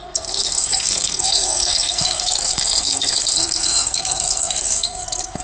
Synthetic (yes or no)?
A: yes